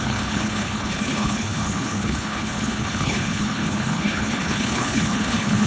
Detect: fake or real fake